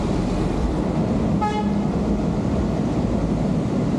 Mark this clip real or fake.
real